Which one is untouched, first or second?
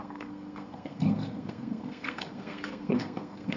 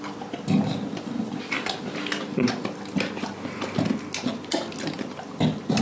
second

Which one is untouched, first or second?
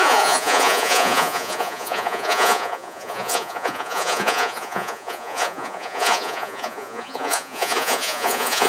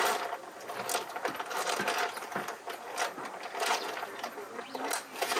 second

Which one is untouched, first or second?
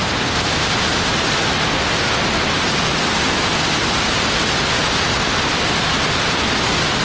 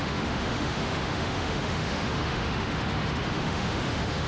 first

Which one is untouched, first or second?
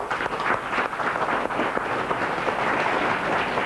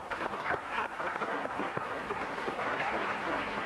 first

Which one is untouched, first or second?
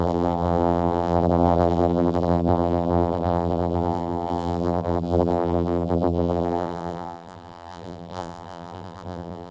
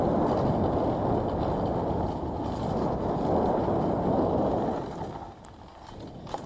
second